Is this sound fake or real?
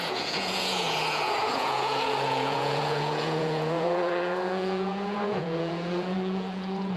fake